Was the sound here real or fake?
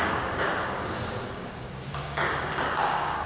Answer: fake